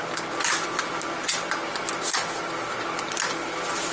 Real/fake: real